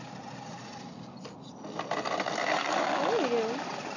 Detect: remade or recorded recorded